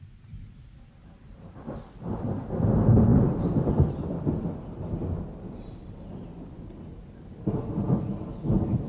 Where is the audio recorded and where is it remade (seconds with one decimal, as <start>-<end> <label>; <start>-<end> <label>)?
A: 0.0-1.0 recorded; 1.0-2.3 remade; 2.3-8.9 recorded